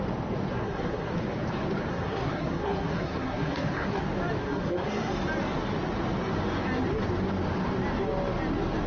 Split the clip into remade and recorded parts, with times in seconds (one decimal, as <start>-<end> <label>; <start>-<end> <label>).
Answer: 0.0-0.5 recorded; 0.5-1.1 remade; 1.1-1.9 recorded; 1.9-4.0 remade; 4.0-4.4 recorded; 4.4-5.1 remade; 5.1-8.9 recorded